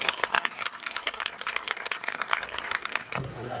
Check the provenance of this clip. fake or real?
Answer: fake